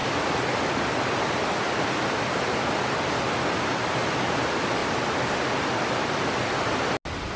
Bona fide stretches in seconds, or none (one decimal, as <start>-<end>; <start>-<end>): 0.0-4.8; 5.4-7.4